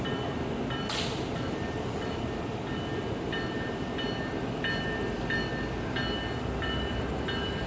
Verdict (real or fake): real